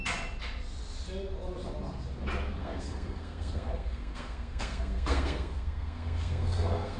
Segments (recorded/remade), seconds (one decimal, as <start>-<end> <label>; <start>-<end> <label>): 0.0-2.6 recorded; 2.6-7.0 remade